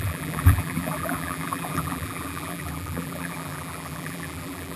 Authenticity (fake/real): fake